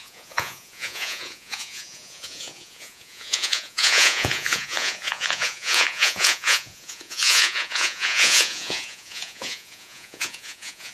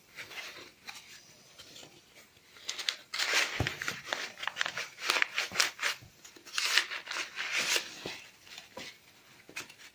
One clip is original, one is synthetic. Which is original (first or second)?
second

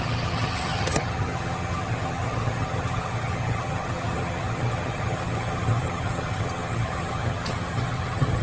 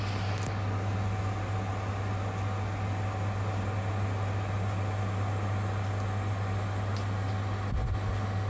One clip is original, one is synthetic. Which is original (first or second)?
second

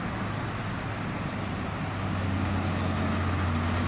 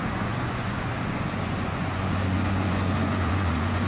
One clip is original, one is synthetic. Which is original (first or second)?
first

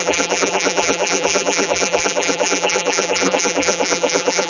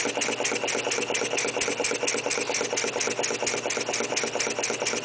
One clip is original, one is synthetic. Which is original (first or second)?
second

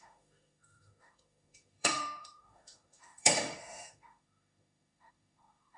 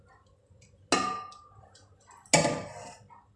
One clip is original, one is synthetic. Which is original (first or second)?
second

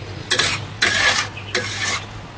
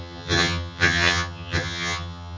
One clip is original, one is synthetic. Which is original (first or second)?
first